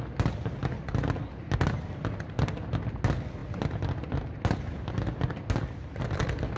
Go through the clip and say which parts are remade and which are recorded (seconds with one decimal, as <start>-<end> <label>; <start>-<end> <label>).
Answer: 0.0-6.6 recorded